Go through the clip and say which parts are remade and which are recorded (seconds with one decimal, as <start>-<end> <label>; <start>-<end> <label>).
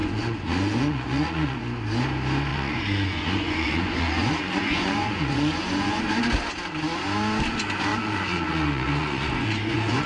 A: 0.0-1.6 remade; 1.6-2.5 recorded; 2.5-6.0 remade; 6.0-7.9 recorded; 7.9-10.1 remade